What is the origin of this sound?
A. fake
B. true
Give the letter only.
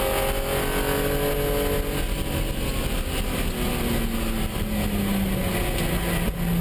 B